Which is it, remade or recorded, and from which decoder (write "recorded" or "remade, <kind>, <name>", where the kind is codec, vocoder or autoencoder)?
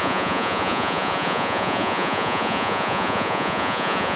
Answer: remade, vocoder, Vocos